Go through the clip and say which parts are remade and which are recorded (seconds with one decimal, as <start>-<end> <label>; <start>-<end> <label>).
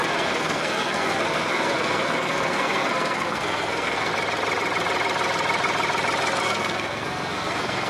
0.0-4.1 remade; 4.1-6.4 recorded; 6.4-7.9 remade